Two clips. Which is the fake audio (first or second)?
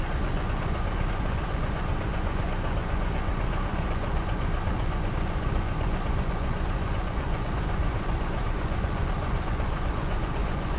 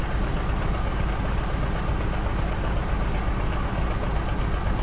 first